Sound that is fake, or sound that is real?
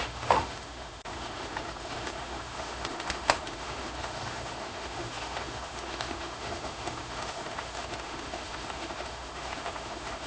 fake